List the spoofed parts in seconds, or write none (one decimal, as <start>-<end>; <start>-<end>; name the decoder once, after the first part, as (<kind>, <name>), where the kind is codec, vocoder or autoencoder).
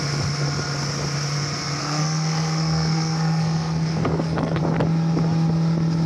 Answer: 1.8-4.6 (codec, SNAC)